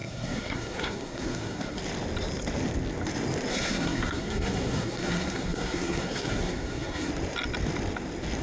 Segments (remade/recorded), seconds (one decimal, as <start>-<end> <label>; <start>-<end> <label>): 0.0-1.8 remade; 1.8-3.5 recorded; 3.5-7.1 remade; 7.1-8.4 recorded